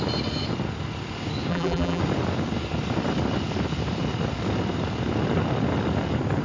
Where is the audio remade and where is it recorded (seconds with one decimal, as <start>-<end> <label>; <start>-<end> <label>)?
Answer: 0.0-1.5 recorded; 1.5-2.0 remade; 2.0-6.4 recorded

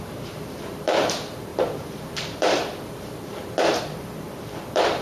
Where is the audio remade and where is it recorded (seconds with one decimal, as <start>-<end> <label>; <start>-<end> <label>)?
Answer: 0.0-5.0 remade